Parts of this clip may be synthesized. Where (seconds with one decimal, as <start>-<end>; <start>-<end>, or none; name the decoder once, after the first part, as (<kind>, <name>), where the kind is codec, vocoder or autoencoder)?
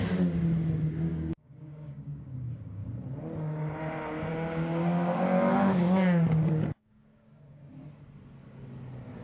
1.1-2.9 (codec, DAC); 4.3-7.7